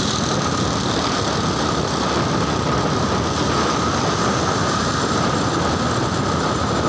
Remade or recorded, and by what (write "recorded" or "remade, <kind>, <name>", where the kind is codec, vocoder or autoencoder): recorded